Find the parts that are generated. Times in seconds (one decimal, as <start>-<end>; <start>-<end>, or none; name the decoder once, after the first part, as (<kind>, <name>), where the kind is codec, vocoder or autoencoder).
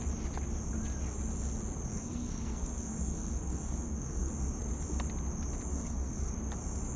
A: 1.9-4.3 (codec, SNAC); 5.7-6.3